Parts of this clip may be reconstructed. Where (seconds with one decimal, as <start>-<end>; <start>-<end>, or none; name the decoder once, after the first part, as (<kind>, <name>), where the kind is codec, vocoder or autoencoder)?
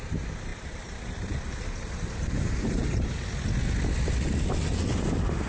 0.5-3.1 (vocoder, BigVGAN v2)